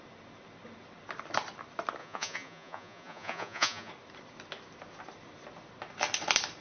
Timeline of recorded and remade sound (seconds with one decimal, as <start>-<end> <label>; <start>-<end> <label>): 0.0-2.0 recorded; 2.0-3.9 remade; 3.9-6.6 recorded